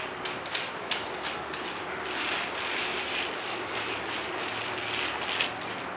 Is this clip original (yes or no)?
yes